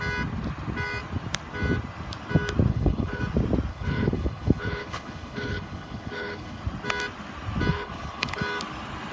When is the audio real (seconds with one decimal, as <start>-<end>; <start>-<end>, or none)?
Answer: 0.0-2.7; 3.2-3.7; 6.6-7.7; 8.4-9.1